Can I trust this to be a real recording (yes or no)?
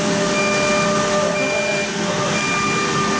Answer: yes